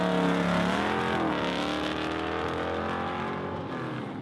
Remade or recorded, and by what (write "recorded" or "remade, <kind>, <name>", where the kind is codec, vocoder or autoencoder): recorded